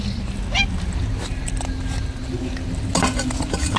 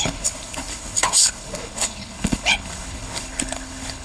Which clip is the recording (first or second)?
first